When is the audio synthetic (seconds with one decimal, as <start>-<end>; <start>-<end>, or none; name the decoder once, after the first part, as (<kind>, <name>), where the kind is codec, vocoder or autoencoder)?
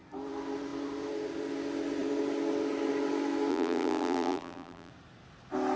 3.5-4.9 (vocoder, BigVGAN v2)